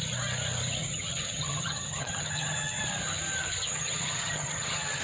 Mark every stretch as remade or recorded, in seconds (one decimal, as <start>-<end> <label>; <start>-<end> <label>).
0.0-0.8 recorded; 0.8-2.8 remade; 2.8-3.7 recorded; 3.7-5.0 remade